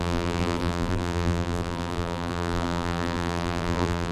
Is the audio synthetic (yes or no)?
yes